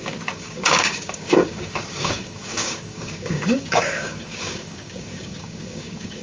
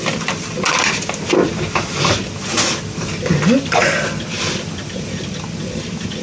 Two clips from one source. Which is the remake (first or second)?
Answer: first